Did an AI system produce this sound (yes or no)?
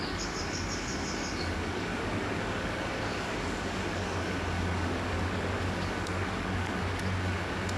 yes